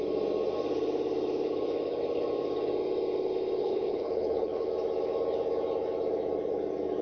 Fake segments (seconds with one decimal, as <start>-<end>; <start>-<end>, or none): 3.6-4.7